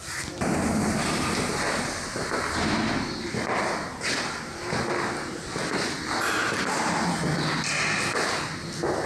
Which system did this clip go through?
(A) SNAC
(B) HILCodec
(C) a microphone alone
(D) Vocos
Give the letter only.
C